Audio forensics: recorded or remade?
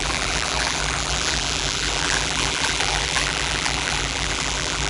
remade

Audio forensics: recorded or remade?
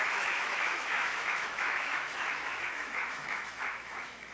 remade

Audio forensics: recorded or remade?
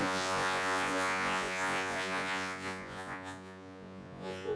remade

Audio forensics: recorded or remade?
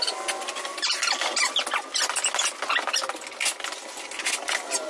recorded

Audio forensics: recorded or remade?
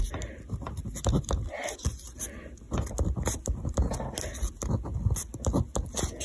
recorded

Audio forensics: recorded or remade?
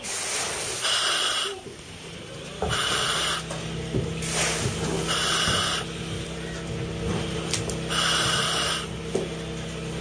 recorded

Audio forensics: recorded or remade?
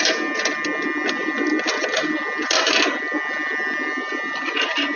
recorded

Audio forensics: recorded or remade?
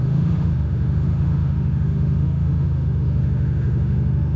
remade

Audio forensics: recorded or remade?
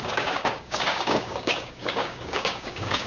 remade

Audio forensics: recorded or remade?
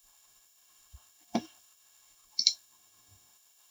remade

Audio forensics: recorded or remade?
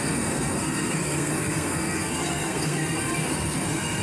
remade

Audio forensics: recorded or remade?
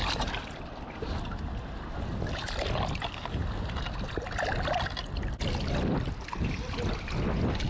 recorded